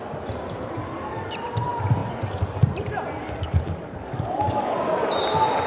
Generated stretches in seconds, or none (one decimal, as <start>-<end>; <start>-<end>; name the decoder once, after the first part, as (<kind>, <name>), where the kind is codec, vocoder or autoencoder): 0.8-1.3 (codec, DAC); 3.2-4.8